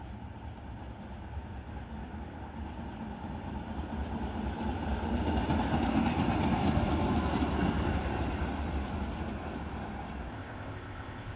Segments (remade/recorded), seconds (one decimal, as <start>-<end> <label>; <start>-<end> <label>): 0.0-10.3 recorded; 10.3-11.4 remade